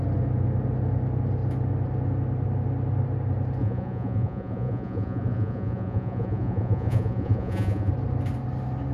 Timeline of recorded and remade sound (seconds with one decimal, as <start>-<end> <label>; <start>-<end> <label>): 0.0-3.6 recorded; 3.6-7.9 remade; 7.9-8.9 recorded